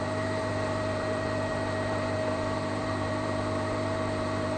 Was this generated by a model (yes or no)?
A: yes